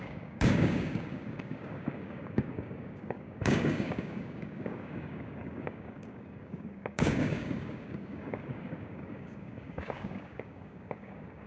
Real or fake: fake